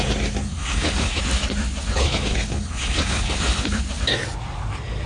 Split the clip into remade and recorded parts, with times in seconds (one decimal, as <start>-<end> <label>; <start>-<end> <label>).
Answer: 0.0-0.5 recorded; 0.5-1.2 remade; 1.2-1.9 recorded; 1.9-3.8 remade; 3.8-5.1 recorded